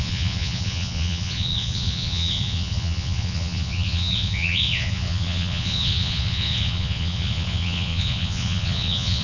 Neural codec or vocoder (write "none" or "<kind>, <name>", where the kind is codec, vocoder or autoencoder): vocoder, Vocos